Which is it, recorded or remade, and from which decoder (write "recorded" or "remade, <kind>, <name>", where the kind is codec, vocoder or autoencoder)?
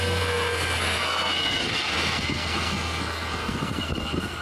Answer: remade, codec, SNAC